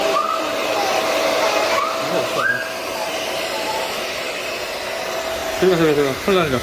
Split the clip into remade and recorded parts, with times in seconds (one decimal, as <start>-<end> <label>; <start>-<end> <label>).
0.0-2.8 recorded; 2.8-4.3 remade; 4.3-6.6 recorded